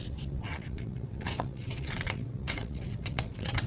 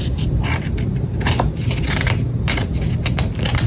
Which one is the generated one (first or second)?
first